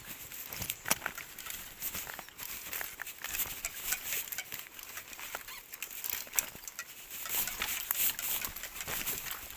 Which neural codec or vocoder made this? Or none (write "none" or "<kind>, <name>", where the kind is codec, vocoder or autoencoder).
none